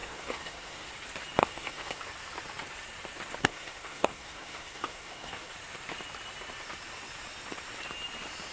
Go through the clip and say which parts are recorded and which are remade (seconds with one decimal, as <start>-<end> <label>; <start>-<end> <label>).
0.0-0.9 remade; 0.9-1.4 recorded; 1.4-2.0 remade; 2.0-3.4 recorded; 3.4-5.5 remade; 5.5-8.5 recorded